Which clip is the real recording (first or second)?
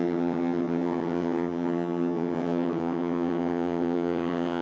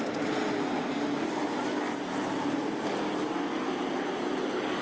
second